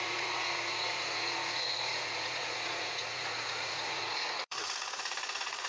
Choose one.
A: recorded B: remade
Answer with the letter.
B